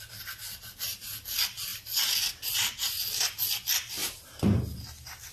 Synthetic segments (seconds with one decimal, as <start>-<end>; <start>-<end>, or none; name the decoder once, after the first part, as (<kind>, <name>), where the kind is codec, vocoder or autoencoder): none